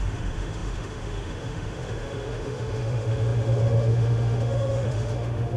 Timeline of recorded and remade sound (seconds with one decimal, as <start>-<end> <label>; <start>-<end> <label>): 0.0-5.6 remade